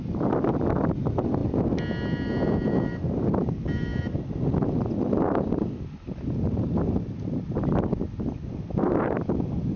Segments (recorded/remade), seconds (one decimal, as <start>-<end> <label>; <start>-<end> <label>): 0.0-9.8 recorded